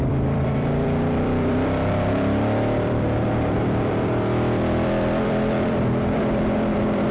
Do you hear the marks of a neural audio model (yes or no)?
yes